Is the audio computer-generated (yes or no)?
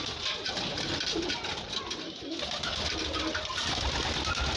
no